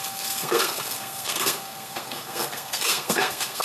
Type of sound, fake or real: fake